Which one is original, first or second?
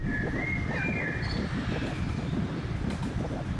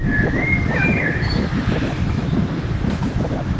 first